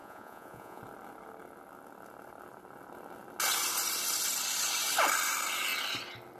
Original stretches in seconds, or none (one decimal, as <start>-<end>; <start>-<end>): 0.8-6.4